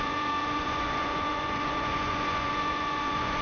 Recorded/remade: remade